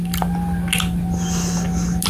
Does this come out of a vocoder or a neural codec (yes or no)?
no